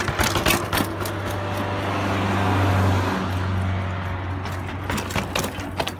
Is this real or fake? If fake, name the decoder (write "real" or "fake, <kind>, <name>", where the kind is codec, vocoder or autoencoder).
real